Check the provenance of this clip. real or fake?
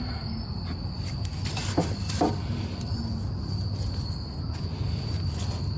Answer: real